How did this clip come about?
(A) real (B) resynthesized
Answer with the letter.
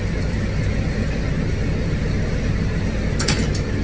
A